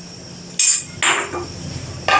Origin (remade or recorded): recorded